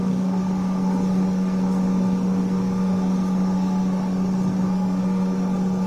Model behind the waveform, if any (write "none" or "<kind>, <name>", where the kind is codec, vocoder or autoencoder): codec, SNAC